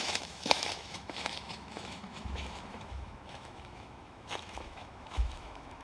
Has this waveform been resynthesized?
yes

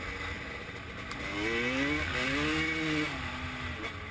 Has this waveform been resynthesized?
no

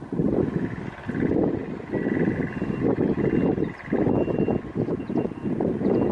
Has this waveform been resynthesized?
no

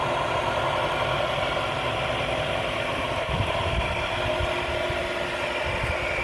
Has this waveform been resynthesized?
no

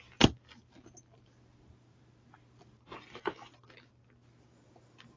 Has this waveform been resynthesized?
no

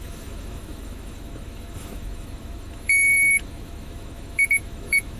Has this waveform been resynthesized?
yes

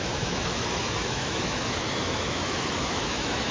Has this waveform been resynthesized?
yes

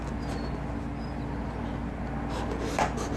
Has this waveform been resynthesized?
no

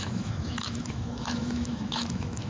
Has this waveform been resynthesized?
yes